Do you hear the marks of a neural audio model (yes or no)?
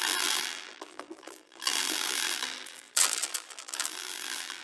yes